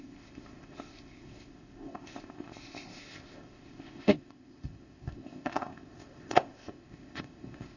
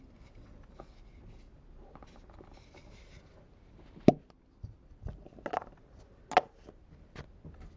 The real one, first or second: second